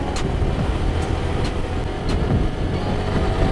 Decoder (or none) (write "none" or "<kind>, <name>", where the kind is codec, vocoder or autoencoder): none